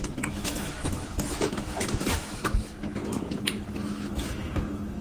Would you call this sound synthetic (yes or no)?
yes